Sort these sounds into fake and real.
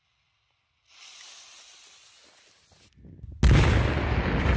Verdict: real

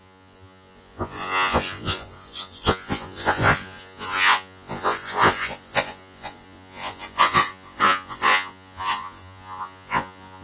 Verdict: fake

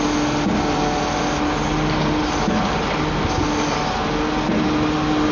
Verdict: real